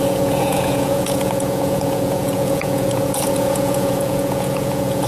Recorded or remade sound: remade